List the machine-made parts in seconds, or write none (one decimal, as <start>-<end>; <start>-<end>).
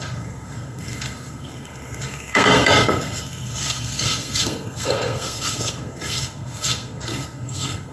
0.0-7.9